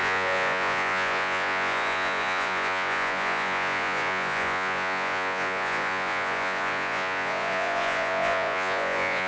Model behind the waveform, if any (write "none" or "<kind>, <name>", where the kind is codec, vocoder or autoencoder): vocoder, Vocos